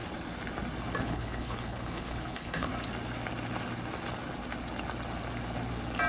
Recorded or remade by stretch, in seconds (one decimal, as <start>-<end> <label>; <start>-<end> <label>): 0.0-1.0 recorded; 1.0-2.7 remade; 2.7-6.1 recorded

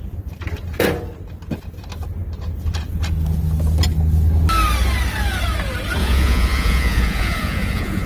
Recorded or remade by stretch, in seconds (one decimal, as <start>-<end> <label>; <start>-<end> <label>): 0.0-6.0 recorded; 6.0-8.1 remade

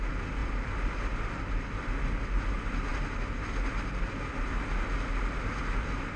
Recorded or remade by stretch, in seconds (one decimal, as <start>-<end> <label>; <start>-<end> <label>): 0.0-0.4 recorded; 0.4-1.4 remade; 1.4-6.2 recorded